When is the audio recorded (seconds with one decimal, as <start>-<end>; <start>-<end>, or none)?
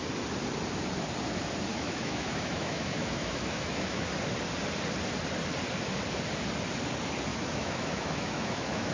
0.0-1.7; 4.0-7.3